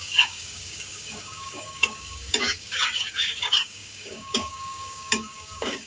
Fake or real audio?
fake